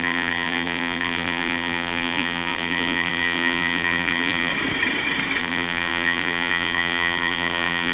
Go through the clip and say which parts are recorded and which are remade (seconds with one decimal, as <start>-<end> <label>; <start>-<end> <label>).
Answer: 0.0-4.5 remade; 4.5-5.4 recorded; 5.4-7.9 remade